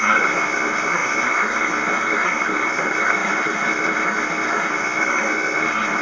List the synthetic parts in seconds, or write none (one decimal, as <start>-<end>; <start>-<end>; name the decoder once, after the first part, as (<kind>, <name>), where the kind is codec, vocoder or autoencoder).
0.0-6.0 (codec, SNAC)